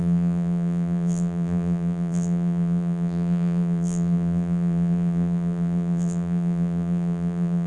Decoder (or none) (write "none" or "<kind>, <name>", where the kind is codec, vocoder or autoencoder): vocoder, BigVGAN v2